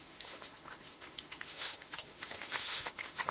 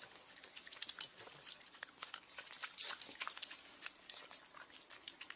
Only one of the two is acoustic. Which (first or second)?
second